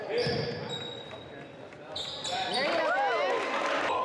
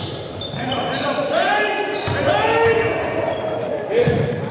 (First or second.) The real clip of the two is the first